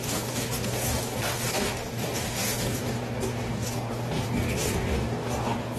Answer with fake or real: fake